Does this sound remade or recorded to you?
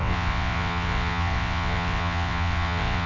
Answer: remade